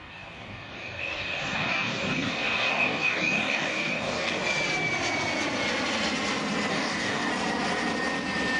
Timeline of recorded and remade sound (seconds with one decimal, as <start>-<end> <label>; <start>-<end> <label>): 0.0-4.4 remade; 4.4-6.7 recorded; 6.7-7.3 remade; 7.3-8.6 recorded